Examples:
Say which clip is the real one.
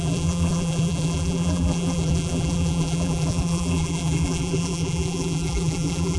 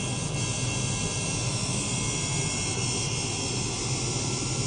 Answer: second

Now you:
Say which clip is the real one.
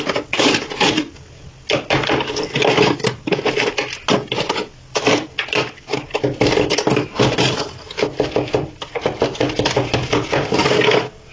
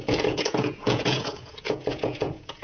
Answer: first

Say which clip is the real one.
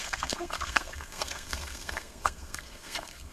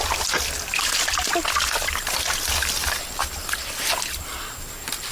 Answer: second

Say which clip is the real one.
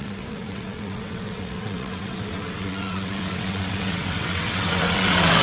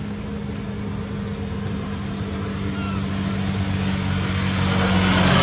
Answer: second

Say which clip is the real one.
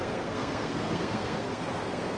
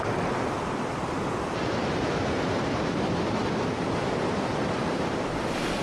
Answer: second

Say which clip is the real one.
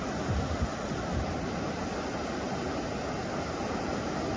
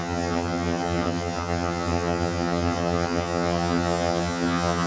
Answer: first